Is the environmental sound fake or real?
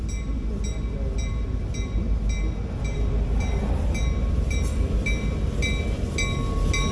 real